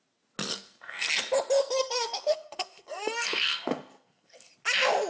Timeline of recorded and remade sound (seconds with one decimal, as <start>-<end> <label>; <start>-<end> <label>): 0.0-0.5 recorded; 0.5-1.1 remade; 1.1-1.6 recorded; 1.6-4.5 remade; 4.5-5.1 recorded